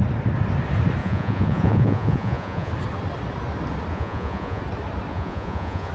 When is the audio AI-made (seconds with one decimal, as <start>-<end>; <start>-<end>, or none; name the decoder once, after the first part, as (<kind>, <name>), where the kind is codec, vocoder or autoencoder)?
1.0-2.7 (vocoder, Vocos); 3.9-4.6; 5.1-5.9